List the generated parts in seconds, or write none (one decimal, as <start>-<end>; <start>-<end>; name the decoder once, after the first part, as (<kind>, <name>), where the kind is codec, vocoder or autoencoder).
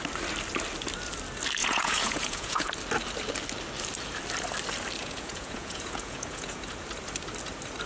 1.6-2.7 (vocoder, Vocos); 5.0-6.6